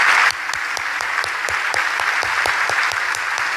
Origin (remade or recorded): recorded